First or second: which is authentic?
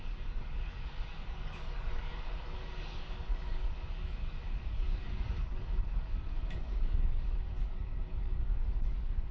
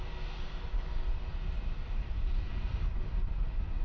second